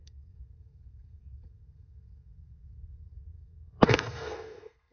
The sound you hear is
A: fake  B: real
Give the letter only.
A